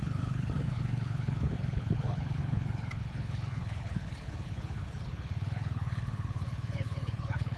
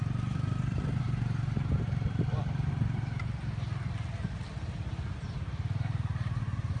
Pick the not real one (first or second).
first